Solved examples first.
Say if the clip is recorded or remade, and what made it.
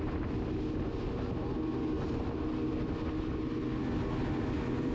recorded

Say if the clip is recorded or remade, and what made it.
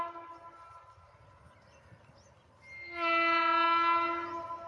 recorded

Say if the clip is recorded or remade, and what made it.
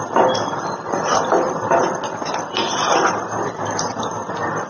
recorded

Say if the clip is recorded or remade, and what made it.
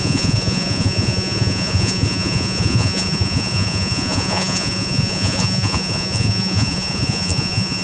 remade, vocoder, Vocos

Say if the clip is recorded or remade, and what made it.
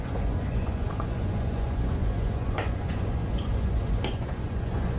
remade, vocoder, Vocos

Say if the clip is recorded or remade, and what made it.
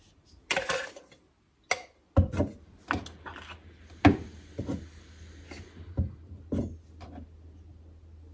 recorded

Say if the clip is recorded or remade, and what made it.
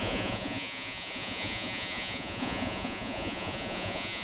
remade, vocoder, Vocos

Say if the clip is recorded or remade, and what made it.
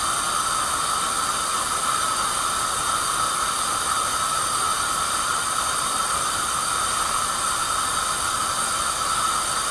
recorded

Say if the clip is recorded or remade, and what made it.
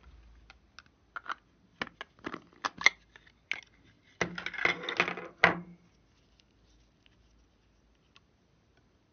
recorded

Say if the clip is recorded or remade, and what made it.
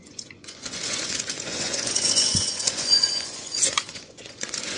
remade, vocoder, Vocos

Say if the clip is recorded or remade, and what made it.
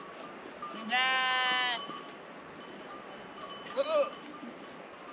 recorded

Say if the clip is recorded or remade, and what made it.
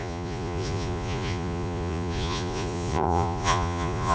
remade, vocoder, Vocos